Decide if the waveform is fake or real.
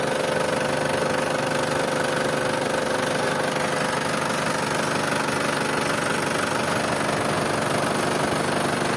real